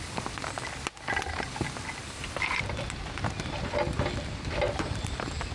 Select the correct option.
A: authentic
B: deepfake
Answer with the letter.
A